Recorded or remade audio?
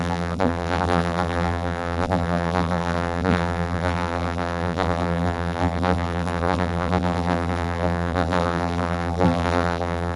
remade